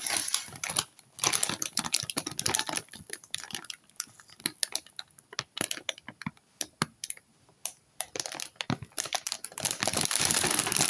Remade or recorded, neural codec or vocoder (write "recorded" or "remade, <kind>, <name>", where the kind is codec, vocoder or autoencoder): recorded